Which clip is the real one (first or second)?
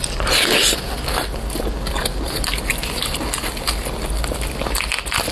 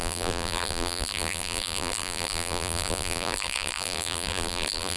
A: first